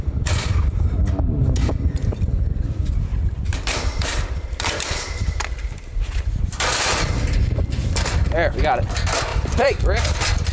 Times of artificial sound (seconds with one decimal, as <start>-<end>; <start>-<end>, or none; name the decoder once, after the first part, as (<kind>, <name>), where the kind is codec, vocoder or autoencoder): 1.4-1.9 (vocoder, BigVGAN v2); 3.1-7.4; 9.3-9.8

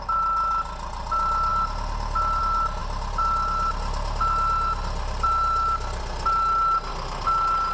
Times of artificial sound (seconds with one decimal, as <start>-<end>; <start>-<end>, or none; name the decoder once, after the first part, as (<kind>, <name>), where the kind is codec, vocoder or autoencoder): none

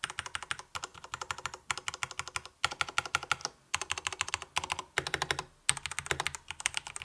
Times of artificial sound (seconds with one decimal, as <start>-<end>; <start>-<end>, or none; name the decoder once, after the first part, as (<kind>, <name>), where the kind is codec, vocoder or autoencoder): none

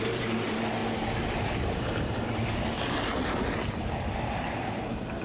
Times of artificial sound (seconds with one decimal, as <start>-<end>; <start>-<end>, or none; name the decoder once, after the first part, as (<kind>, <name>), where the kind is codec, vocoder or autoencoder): 0.0-0.8 (vocoder, BigVGAN v2); 3.9-5.2

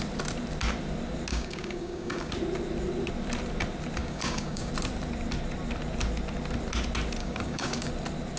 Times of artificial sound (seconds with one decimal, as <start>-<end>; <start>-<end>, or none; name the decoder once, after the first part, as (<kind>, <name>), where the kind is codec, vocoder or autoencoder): 1.3-2.3 (codec, DAC); 4.0-4.7; 7.2-7.9

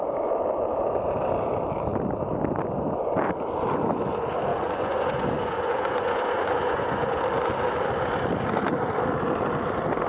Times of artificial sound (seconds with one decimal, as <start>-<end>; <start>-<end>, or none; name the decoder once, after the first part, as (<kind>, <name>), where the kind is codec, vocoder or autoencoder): 4.5-7.2 (vocoder, Vocos)

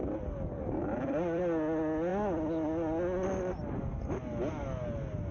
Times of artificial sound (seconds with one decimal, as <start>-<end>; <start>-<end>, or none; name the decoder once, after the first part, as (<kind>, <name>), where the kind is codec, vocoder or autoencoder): 0.0-1.4 (vocoder, BigVGAN v2)